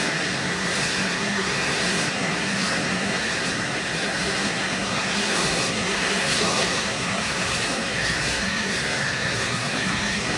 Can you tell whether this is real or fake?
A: fake